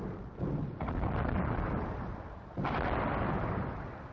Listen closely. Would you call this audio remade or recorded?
recorded